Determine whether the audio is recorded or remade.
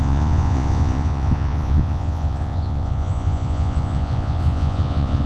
remade